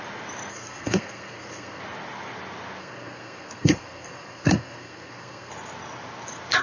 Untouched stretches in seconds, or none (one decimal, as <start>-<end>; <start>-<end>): 0.0-0.5; 1.8-2.8; 5.5-6.6